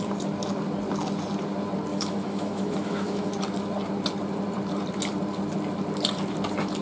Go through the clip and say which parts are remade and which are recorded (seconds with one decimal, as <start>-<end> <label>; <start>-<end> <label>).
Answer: 0.0-1.9 recorded; 1.9-3.3 remade; 3.3-6.8 recorded